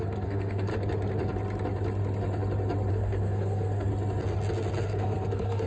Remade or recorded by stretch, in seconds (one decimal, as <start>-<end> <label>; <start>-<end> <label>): 0.0-0.7 remade; 0.7-2.9 recorded; 2.9-3.9 remade; 3.9-4.8 recorded; 4.8-5.7 remade